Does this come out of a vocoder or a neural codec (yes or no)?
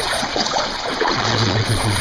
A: yes